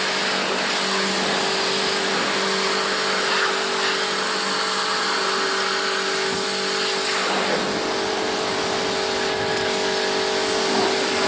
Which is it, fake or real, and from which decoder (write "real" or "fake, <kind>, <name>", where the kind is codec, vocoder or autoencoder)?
real